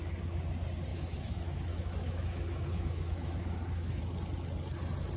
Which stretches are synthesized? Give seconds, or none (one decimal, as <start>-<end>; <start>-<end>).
0.9-4.0

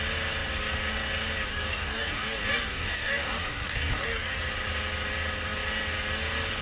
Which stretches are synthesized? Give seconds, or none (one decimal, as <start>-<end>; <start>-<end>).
1.5-4.4

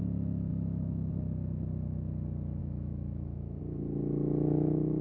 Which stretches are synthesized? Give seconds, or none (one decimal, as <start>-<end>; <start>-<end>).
0.5-1.1; 2.6-3.6

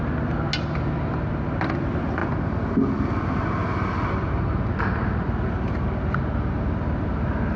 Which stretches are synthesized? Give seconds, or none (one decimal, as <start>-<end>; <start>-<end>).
none

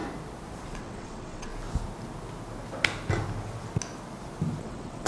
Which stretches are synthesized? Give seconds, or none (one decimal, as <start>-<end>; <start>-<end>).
0.8-1.5; 4.6-5.1

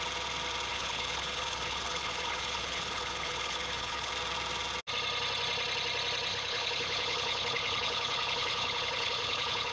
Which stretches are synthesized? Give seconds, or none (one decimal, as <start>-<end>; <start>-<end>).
0.7-4.1; 6.3-9.7

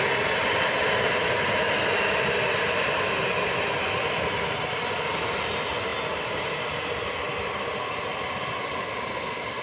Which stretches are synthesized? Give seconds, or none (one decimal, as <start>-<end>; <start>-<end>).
none

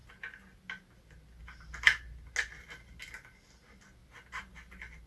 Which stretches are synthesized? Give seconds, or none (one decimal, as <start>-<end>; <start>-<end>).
none